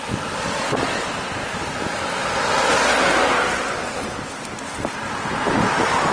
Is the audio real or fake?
real